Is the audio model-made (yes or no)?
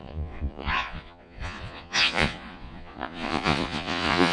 yes